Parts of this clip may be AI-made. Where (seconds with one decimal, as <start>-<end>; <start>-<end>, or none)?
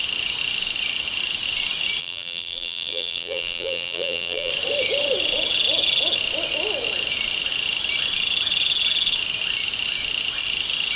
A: 2.0-4.5